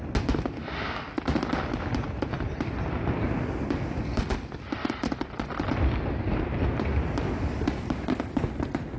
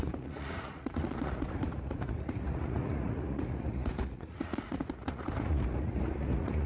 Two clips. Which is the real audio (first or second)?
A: first